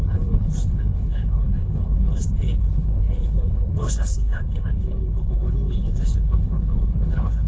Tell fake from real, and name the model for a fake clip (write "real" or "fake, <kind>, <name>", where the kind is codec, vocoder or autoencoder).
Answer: fake, codec, HILCodec